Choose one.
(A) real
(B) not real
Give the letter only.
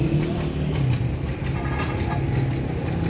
A